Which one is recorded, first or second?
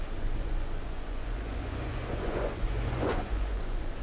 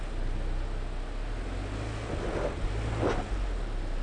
second